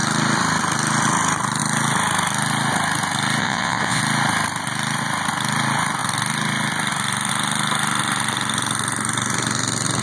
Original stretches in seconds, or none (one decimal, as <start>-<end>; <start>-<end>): 0.0-3.4; 4.0-10.0

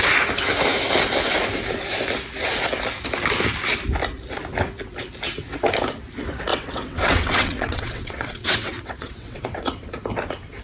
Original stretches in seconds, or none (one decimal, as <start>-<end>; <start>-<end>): 0.0-6.5; 9.7-10.6

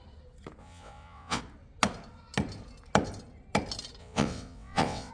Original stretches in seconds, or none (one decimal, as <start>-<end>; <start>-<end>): 0.0-0.6; 1.4-4.0

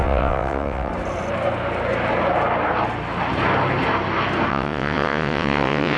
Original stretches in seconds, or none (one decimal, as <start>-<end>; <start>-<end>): 0.9-4.5